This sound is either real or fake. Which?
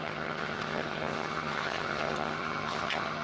fake